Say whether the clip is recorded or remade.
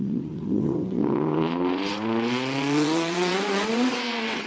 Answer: remade